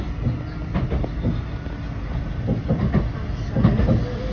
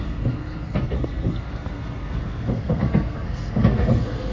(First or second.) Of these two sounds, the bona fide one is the first